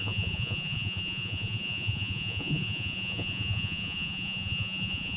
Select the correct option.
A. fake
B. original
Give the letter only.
A